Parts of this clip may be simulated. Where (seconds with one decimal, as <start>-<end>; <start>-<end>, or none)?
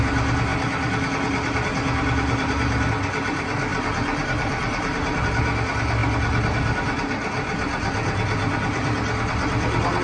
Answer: 3.7-5.2; 6.0-10.0